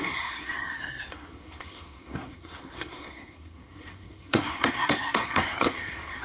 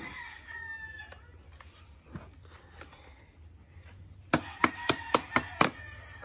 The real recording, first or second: second